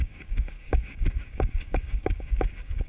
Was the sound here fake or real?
fake